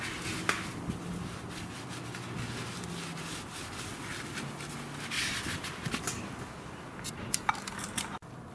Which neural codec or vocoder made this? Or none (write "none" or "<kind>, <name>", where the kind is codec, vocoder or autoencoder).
none